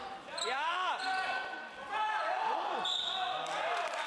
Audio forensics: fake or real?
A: fake